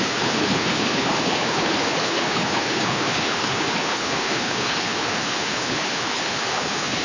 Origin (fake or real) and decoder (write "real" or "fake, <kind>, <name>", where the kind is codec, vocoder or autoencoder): fake, codec, HILCodec